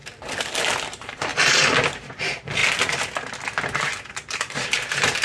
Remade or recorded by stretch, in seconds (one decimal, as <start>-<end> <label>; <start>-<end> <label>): 0.0-0.9 recorded; 0.9-1.3 remade; 1.3-1.9 recorded; 1.9-2.6 remade; 2.6-4.1 recorded; 4.1-5.2 remade